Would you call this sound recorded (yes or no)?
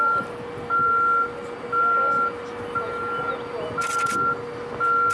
yes